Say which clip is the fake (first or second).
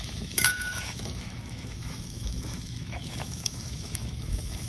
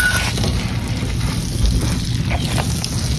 first